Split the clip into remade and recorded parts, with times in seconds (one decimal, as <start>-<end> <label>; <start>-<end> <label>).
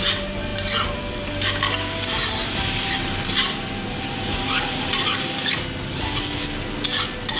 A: 0.0-7.4 recorded